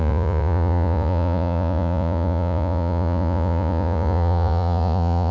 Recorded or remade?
remade